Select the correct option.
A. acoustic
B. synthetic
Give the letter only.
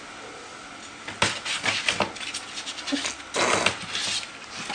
A